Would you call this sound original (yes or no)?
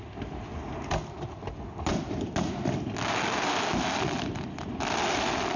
yes